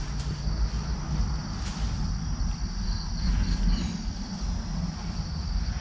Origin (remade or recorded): recorded